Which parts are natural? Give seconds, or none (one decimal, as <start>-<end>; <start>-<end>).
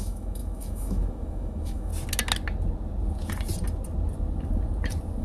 1.9-5.2